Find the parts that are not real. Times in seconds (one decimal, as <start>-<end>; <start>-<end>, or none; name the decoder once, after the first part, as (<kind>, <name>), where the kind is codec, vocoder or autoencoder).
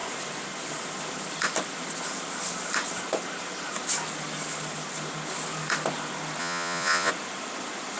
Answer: 6.4-7.1 (vocoder, Vocos)